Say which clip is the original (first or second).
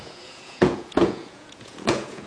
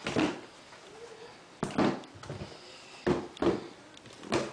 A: second